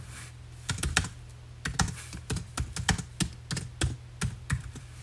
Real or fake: real